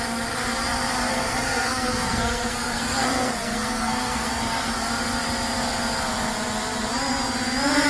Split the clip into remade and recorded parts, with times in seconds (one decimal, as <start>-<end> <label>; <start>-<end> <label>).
0.0-1.1 recorded; 1.1-4.9 remade; 4.9-7.9 recorded